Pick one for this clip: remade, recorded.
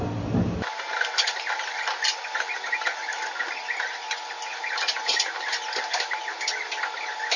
recorded